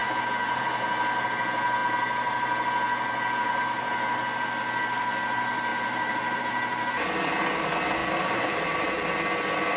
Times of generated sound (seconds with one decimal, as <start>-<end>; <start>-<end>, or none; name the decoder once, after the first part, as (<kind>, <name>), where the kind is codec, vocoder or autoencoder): 5.7-6.4 (vocoder, BigVGAN v2); 8.0-9.1